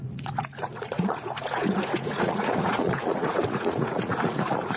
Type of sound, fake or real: fake